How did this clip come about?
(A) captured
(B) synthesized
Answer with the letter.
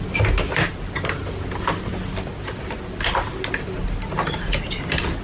A